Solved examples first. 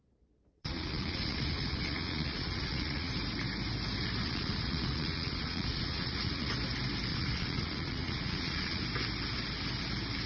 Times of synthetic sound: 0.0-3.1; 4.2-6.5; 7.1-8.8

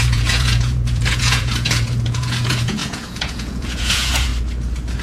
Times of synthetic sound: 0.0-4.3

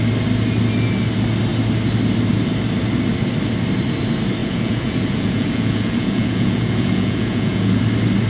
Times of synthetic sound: 4.4-7.8

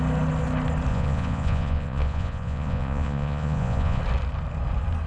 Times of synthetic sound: 0.9-4.0